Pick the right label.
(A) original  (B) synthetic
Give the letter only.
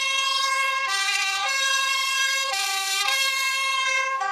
B